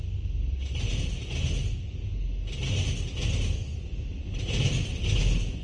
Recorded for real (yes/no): yes